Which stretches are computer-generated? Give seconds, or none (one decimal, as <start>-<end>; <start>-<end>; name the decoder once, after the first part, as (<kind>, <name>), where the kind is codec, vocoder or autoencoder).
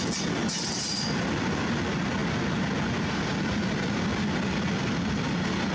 none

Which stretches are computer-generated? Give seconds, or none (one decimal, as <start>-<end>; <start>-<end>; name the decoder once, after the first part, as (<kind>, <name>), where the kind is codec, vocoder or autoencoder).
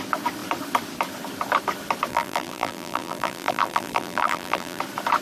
2.1-4.8 (vocoder, BigVGAN v2)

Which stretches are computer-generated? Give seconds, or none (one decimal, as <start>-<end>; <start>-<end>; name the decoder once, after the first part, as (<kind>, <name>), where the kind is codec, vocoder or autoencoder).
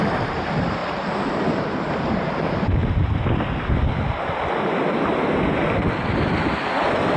0.0-0.8 (vocoder, BigVGAN v2); 1.6-2.8